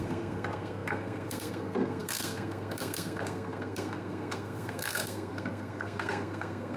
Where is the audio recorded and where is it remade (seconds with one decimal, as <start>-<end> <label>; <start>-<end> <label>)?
0.0-6.8 remade